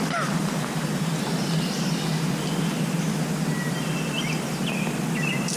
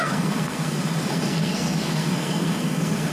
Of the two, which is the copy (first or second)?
second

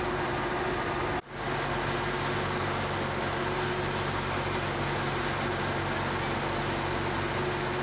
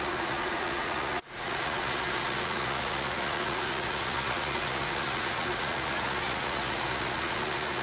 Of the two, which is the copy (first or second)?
second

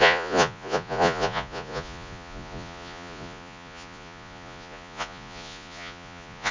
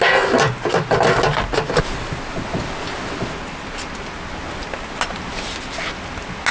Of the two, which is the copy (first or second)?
first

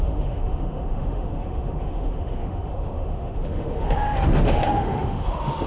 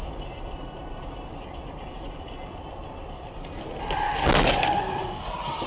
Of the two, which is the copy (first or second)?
first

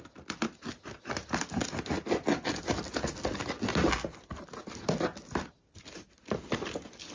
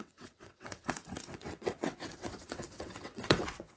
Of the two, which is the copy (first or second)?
second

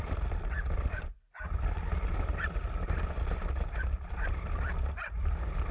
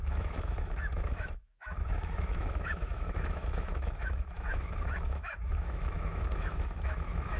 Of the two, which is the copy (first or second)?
second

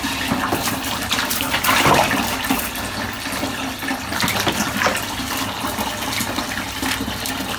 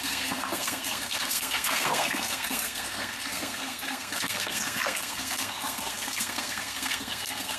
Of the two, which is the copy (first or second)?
second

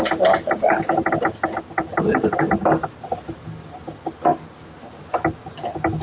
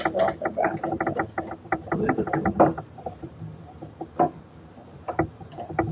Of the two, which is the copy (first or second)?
second